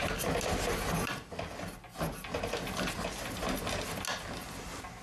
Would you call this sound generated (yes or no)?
no